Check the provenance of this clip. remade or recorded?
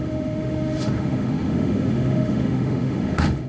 remade